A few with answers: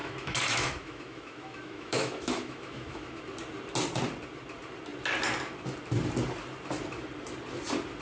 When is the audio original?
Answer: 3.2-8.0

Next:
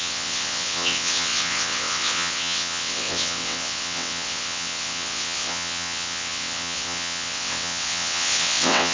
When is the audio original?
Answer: none